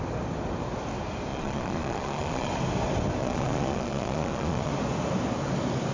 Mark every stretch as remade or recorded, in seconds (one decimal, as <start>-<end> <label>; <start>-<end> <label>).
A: 0.0-1.3 recorded; 1.3-2.5 remade; 2.5-3.2 recorded; 3.2-4.7 remade; 4.7-5.9 recorded